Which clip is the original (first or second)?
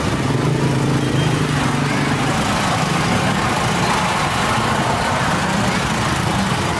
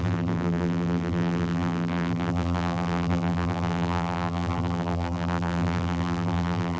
first